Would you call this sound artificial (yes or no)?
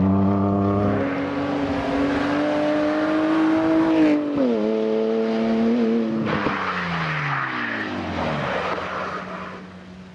no